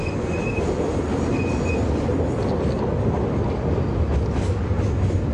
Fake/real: real